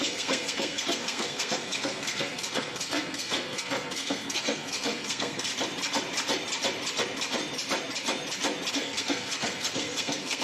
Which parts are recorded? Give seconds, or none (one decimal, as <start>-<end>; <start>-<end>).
5.5-8.7

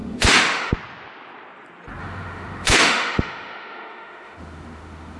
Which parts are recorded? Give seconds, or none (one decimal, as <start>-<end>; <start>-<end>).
0.7-2.0

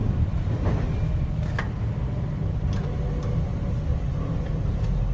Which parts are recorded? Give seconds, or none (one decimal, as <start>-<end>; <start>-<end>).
0.0-5.1

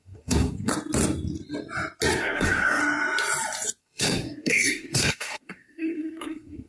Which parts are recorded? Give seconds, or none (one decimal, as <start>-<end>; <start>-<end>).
0.7-2.2; 2.8-3.8

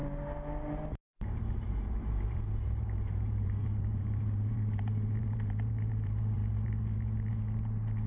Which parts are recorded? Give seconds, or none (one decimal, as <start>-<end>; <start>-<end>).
0.0-1.0

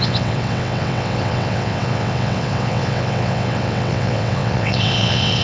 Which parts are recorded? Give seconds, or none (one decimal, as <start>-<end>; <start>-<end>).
none

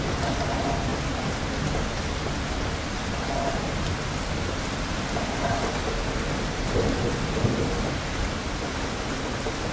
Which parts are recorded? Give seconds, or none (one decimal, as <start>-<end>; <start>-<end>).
0.0-9.7